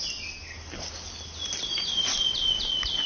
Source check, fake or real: real